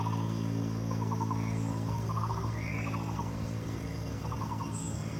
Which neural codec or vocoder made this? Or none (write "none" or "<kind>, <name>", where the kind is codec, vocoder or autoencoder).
codec, SNAC